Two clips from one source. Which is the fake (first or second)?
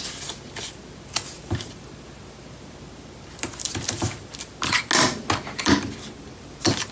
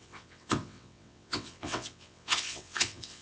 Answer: second